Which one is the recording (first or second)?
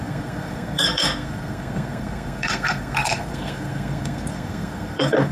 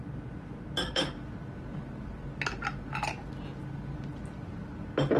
second